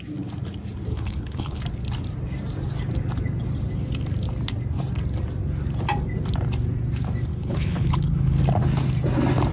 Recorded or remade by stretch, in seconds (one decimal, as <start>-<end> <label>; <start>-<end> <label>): 0.0-0.9 recorded; 0.9-1.6 remade; 1.6-7.3 recorded; 7.3-8.4 remade; 8.4-9.5 recorded

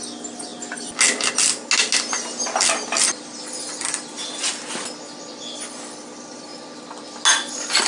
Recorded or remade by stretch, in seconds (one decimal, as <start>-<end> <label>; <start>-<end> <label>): 0.0-7.9 recorded

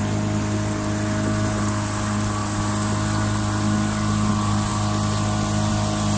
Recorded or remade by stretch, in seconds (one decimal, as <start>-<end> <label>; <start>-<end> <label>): 0.0-6.2 recorded

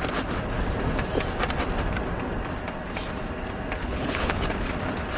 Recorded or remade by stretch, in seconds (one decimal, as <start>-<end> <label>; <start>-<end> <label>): 0.0-3.8 recorded; 3.8-4.7 remade; 4.7-5.2 recorded

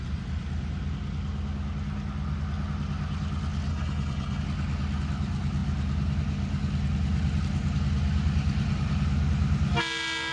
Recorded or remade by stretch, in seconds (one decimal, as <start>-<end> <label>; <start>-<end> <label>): 0.0-3.7 recorded; 3.7-4.4 remade; 4.4-10.3 recorded

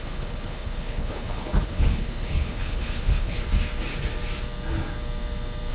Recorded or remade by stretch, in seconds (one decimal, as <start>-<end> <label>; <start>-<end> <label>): 0.0-3.4 remade; 3.4-5.7 recorded

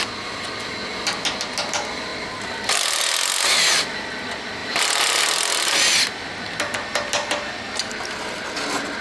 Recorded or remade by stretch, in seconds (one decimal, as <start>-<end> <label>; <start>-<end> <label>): 0.0-9.0 recorded